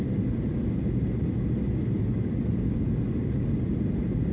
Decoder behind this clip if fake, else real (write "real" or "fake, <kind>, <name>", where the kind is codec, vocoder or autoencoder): real